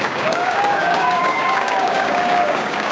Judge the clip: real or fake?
fake